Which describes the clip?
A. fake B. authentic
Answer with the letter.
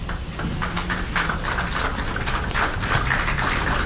B